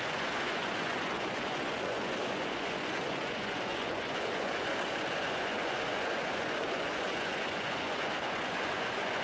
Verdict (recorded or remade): remade